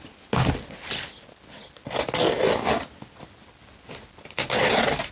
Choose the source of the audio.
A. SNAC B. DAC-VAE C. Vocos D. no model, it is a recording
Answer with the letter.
D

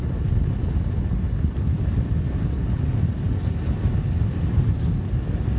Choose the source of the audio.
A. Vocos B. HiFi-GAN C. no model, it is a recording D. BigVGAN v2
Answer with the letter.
C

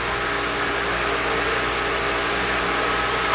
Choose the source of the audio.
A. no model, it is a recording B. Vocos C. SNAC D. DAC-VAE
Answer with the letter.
A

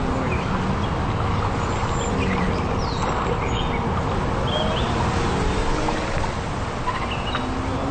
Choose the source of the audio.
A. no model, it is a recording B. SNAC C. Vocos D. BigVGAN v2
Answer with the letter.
A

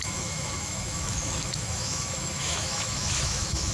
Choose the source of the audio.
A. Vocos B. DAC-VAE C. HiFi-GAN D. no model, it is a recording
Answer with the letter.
B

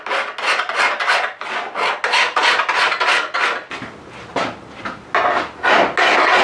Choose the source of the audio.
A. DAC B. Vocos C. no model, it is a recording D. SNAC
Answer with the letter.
C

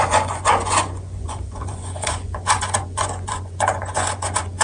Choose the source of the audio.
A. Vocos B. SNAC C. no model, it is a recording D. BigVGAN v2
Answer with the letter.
A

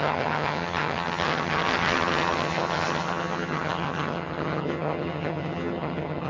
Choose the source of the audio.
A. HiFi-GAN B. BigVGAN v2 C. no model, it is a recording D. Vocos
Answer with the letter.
A